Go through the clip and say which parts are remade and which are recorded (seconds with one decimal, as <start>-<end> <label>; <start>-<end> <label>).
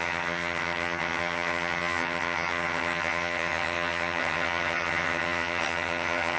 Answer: 0.0-6.4 remade